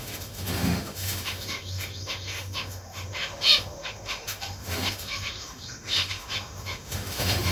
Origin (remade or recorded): remade